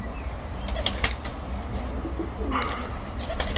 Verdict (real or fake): real